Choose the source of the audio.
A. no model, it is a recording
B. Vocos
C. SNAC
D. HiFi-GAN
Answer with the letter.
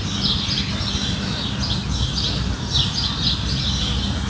A